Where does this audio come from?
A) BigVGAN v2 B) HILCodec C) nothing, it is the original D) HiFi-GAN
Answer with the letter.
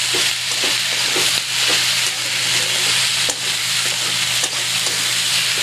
C